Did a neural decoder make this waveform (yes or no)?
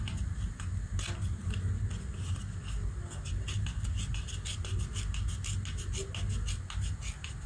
no